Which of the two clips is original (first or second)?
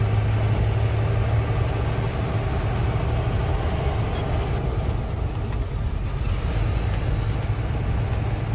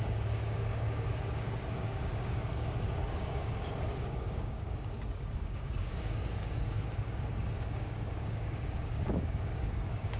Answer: first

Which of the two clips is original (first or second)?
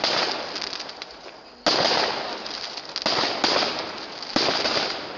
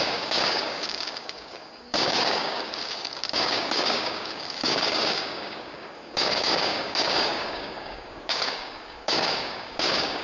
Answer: first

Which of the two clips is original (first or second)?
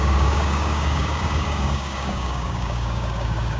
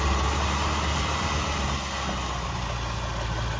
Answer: second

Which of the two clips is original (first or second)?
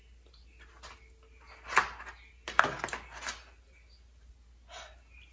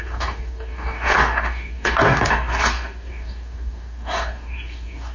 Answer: first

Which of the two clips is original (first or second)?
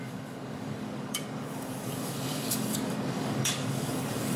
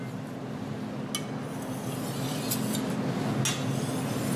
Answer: second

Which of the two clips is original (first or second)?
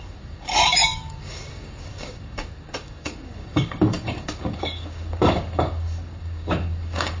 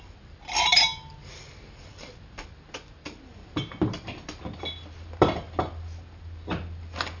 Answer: second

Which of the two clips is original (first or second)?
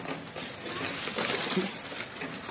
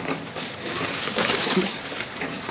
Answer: first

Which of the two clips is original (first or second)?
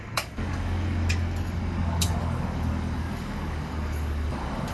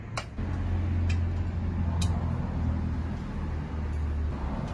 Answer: second